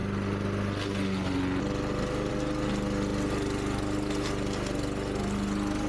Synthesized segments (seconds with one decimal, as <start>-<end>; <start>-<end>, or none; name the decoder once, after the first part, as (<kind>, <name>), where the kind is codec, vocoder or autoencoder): none